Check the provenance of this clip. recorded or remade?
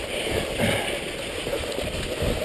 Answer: recorded